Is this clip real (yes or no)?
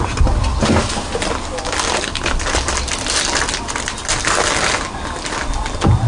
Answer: yes